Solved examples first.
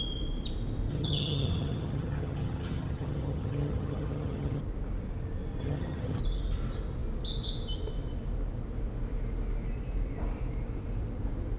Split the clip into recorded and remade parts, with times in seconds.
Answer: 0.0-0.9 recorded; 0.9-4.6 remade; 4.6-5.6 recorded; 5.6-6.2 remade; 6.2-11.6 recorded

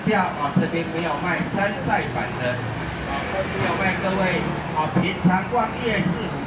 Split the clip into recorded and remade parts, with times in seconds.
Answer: 0.0-6.5 recorded

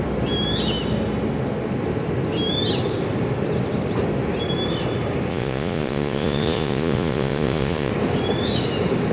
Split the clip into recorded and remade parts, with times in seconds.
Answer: 0.0-5.3 recorded; 5.3-7.9 remade; 7.9-9.1 recorded

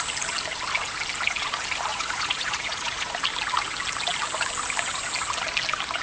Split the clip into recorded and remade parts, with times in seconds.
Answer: 0.0-1.9 recorded; 1.9-3.1 remade; 3.1-6.0 recorded

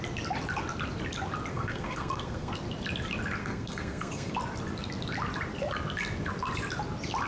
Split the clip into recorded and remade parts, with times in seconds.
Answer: 0.0-1.5 recorded; 1.5-2.5 remade; 2.5-3.4 recorded; 3.4-4.3 remade; 4.3-7.3 recorded

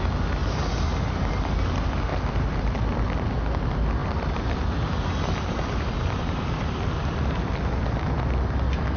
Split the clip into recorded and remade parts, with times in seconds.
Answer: 0.0-0.4 recorded; 0.4-1.3 remade; 1.3-2.1 recorded; 2.1-2.8 remade; 2.8-4.0 recorded; 4.0-8.1 remade; 8.1-9.0 recorded

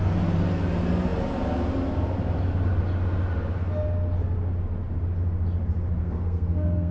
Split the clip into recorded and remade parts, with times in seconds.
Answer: 0.0-6.0 recorded; 6.0-6.9 remade